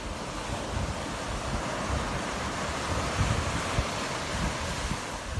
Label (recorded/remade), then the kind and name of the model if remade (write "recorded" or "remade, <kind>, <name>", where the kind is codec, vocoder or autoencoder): remade, vocoder, BigVGAN v2